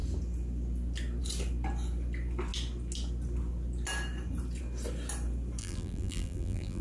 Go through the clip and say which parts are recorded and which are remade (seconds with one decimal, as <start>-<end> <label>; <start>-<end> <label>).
0.0-5.6 recorded; 5.6-6.8 remade